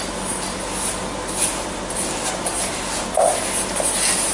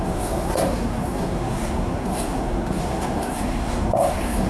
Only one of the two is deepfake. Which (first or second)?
second